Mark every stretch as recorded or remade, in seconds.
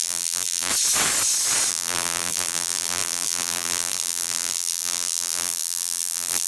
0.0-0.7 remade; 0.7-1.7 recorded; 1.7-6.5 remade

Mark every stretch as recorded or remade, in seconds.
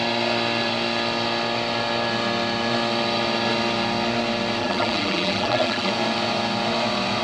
0.0-4.6 recorded; 4.6-5.9 remade; 5.9-7.2 recorded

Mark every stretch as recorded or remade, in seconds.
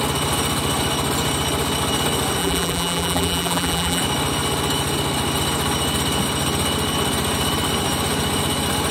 0.0-2.4 recorded; 2.4-4.0 remade; 4.0-8.9 recorded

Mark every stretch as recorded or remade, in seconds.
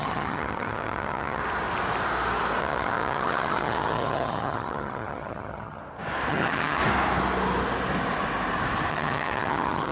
0.0-1.4 remade; 1.4-2.6 recorded; 2.6-5.8 remade; 5.8-6.3 recorded; 6.3-6.8 remade; 6.8-8.9 recorded; 8.9-9.9 remade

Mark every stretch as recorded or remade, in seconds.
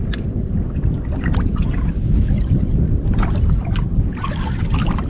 0.0-5.1 recorded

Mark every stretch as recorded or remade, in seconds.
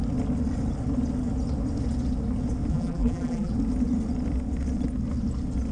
0.0-2.7 recorded; 2.7-3.5 remade; 3.5-5.7 recorded